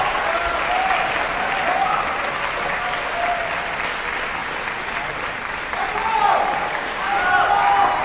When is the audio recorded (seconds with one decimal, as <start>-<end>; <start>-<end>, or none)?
0.0-6.6; 7.3-8.0